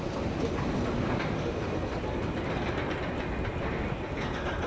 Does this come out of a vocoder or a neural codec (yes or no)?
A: no